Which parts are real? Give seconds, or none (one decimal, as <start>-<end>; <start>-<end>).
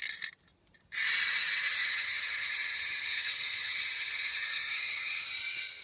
0.0-1.8; 5.3-5.8